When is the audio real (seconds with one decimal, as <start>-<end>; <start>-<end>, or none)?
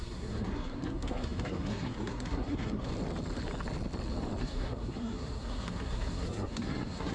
2.9-4.4